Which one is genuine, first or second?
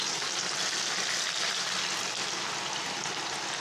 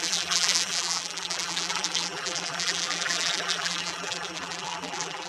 first